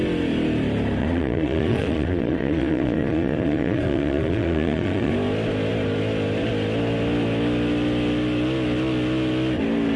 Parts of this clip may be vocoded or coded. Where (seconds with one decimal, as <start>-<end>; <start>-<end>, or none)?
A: 1.0-5.1

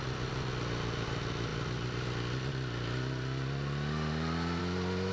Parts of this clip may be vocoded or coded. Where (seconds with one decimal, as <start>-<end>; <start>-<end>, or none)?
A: none

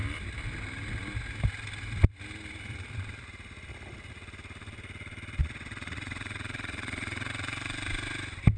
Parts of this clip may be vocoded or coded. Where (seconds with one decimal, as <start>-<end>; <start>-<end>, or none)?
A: 5.4-7.3

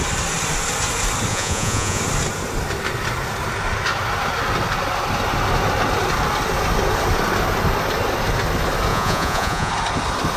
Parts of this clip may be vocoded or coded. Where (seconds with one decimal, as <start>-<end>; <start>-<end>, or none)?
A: 1.3-2.0; 8.9-9.7

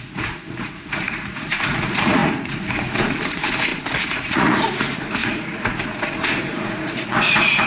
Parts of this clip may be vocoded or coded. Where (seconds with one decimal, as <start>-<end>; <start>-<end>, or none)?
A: 0.0-7.7